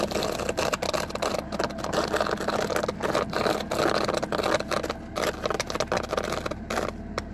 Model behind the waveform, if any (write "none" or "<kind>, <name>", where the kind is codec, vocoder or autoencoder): none